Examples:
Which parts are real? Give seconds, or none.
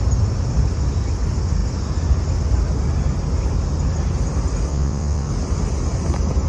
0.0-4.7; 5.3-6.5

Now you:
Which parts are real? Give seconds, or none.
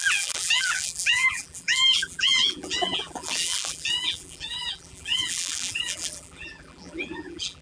none